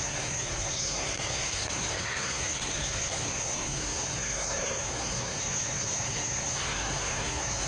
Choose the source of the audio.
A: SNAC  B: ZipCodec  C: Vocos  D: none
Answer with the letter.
A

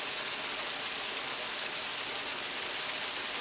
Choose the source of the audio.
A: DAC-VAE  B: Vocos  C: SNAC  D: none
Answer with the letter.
D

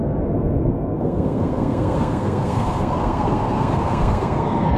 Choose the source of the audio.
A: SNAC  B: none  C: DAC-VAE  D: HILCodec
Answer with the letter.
A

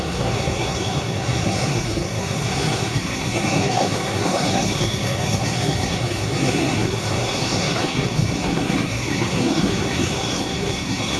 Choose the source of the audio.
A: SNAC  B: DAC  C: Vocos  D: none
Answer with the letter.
A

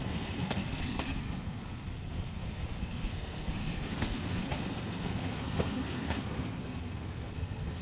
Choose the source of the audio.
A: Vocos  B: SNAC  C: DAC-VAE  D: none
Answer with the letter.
B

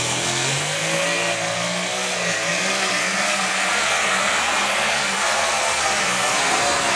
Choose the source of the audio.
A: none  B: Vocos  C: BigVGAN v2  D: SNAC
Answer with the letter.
D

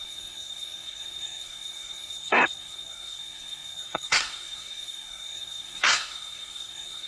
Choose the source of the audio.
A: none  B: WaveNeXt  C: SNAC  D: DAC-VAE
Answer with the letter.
C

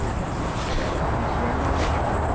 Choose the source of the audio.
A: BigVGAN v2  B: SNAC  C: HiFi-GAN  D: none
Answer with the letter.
D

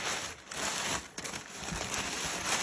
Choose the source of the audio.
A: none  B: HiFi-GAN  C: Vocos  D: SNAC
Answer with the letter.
A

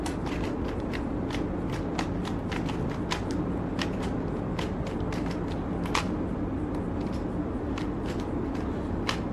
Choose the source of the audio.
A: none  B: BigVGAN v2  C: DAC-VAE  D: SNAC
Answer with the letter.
A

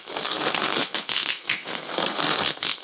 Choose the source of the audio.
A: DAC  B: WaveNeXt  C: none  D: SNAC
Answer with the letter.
D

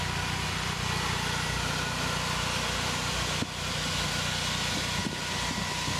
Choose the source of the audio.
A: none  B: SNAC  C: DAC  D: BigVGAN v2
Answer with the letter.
A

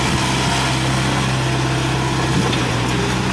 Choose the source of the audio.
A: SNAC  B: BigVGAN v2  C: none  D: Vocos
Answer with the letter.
C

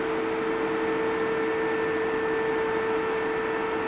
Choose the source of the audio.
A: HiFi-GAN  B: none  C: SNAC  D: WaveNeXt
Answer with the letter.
B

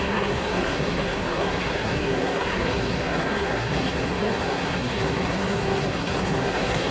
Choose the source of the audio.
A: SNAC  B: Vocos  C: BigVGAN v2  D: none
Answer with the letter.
A